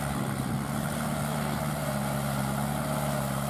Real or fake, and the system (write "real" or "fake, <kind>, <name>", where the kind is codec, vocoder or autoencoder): real